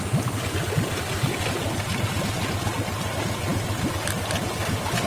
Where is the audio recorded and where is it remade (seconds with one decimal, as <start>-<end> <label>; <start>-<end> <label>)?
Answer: 0.0-5.1 recorded